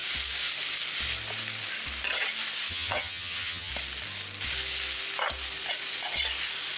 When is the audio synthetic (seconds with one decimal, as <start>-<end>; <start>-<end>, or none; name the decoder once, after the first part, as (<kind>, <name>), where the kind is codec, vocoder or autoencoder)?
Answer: 2.7-3.7 (vocoder, HiFi-GAN)